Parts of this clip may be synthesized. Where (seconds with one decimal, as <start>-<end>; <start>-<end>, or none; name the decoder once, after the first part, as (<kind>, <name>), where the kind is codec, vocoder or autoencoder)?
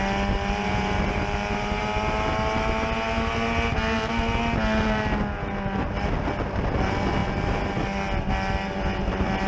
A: none